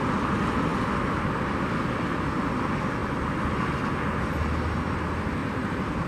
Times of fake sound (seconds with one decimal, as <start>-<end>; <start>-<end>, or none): 5.4-6.1

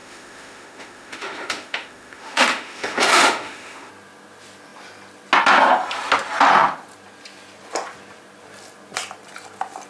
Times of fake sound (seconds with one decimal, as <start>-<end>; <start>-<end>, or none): 0.0-3.9

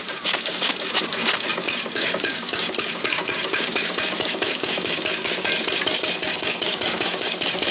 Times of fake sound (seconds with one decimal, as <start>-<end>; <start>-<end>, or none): 0.0-5.5; 6.0-7.7